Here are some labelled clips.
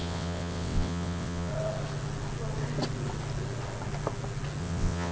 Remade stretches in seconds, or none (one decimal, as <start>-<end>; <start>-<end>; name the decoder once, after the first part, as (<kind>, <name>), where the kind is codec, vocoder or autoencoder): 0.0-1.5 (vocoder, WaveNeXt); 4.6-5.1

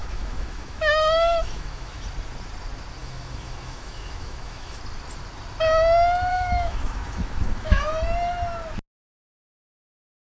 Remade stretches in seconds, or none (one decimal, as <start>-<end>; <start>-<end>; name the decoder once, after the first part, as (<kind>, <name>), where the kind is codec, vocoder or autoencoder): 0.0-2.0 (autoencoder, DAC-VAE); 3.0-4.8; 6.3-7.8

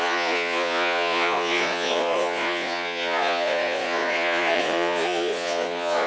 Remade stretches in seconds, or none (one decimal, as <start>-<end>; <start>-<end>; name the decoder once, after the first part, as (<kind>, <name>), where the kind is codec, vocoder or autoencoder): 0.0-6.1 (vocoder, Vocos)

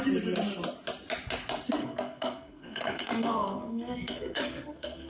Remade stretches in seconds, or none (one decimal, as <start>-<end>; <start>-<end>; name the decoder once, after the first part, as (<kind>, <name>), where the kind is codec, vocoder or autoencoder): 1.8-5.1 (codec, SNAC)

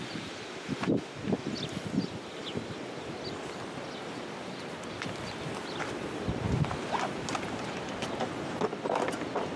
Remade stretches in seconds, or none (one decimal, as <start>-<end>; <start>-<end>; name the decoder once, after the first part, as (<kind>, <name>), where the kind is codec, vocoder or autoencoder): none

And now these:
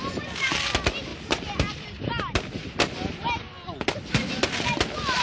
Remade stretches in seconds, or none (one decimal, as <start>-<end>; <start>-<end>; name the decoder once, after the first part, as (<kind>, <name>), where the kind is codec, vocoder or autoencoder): none